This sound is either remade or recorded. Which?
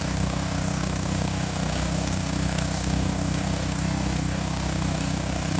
remade